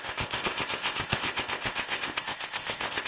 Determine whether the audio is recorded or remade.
remade